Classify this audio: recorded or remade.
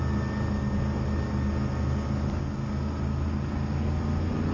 recorded